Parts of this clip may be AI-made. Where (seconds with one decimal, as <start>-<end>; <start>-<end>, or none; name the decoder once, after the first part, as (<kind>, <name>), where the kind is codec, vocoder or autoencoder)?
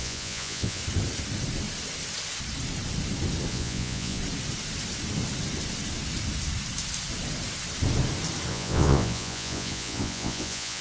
0.0-0.8 (vocoder, Vocos); 3.5-4.2; 8.5-10.8